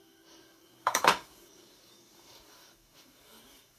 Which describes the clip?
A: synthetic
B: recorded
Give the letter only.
A